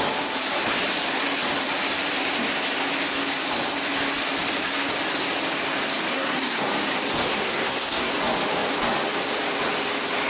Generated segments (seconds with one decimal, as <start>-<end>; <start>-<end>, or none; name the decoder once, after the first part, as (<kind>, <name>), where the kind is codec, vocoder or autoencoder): 6.1-6.6 (codec, SNAC); 7.3-8.1